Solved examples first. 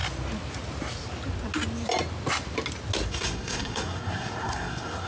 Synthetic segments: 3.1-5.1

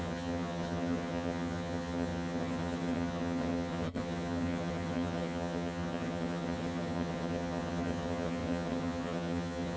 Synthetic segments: 0.0-9.8

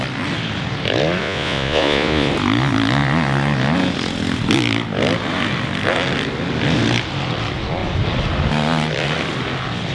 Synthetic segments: 1.2-2.3

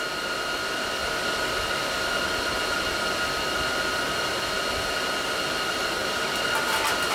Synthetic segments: none

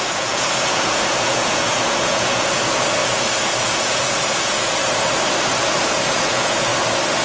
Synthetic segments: 0.0-4.8; 5.8-6.7

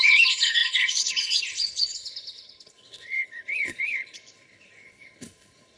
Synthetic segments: 0.0-5.8

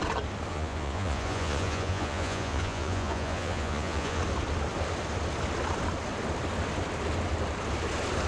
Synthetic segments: 0.5-4.2